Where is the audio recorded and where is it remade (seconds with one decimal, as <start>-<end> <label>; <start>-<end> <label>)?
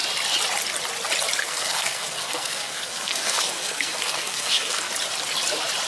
0.0-1.4 recorded; 1.4-4.9 remade; 4.9-5.9 recorded